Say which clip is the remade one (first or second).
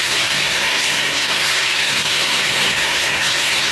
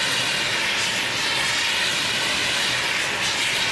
first